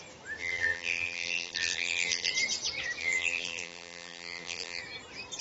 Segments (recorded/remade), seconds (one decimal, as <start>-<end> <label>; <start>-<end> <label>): 0.0-0.4 recorded; 0.4-2.3 remade; 2.3-3.0 recorded; 3.0-4.8 remade; 4.8-5.4 recorded